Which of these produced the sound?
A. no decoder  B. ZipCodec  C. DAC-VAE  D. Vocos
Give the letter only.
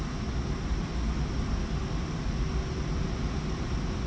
A